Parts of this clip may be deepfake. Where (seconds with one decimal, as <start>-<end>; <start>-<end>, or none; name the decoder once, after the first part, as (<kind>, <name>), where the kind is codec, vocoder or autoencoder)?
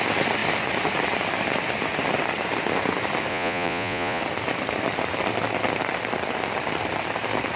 3.3-4.2 (vocoder, Vocos)